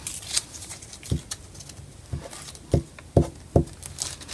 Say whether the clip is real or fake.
real